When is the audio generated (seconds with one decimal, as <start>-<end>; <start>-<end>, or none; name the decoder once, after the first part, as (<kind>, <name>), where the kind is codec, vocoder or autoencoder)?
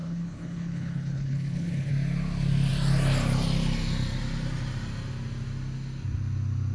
0.0-1.9 (codec, HILCodec)